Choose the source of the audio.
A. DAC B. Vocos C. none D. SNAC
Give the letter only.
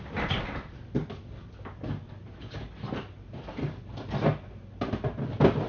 C